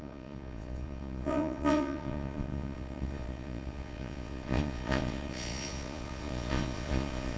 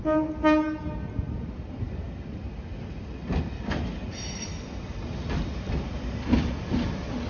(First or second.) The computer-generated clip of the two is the first